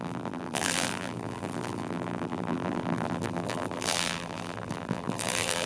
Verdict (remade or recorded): remade